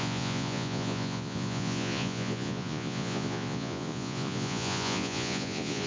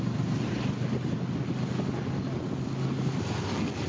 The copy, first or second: first